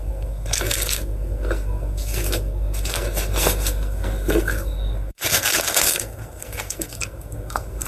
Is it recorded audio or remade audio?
remade